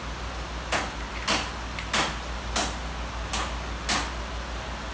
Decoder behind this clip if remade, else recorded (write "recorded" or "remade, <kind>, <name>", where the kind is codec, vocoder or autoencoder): recorded